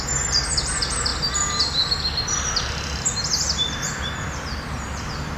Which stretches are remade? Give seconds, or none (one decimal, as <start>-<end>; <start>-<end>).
none